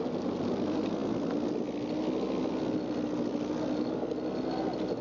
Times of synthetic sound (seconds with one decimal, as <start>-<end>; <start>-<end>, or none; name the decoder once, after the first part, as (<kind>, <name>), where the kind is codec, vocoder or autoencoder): none